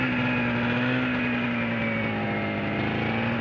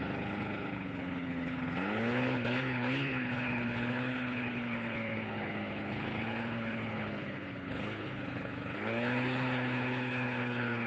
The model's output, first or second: second